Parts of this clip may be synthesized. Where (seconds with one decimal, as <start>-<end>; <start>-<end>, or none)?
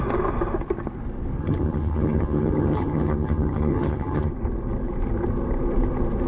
1.4-4.3